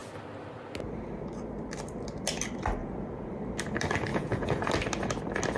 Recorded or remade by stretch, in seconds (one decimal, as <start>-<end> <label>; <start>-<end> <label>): 0.0-2.8 recorded; 2.8-3.3 remade; 3.3-4.1 recorded; 4.1-4.7 remade; 4.7-5.6 recorded

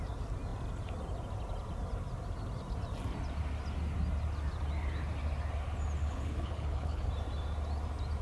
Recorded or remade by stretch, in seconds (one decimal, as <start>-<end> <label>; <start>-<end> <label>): 0.0-6.0 recorded; 6.0-7.1 remade; 7.1-8.2 recorded

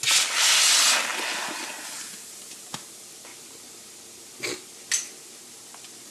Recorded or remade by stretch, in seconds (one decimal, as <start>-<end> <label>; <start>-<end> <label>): 0.0-6.1 recorded

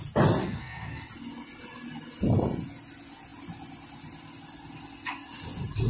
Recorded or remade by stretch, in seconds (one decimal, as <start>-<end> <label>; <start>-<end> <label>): 0.0-0.4 recorded; 0.4-1.0 remade; 1.0-5.9 recorded

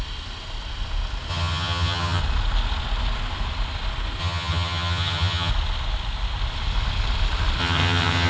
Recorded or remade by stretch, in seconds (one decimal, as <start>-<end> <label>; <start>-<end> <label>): 0.0-1.3 recorded; 1.3-2.2 remade; 2.2-4.2 recorded; 4.2-5.5 remade; 5.5-7.6 recorded; 7.6-8.3 remade